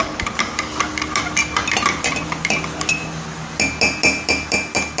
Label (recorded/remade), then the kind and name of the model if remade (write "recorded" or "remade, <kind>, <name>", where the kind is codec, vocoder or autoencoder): recorded